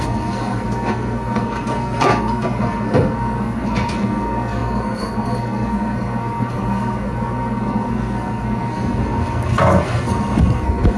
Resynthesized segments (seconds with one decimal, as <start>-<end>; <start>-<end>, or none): 0.0-11.0